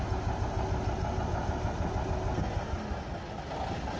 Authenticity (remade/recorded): recorded